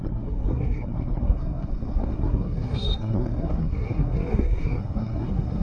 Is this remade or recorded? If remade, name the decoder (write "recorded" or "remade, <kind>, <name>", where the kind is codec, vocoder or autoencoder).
remade, codec, SNAC